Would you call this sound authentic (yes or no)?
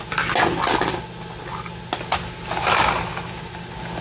yes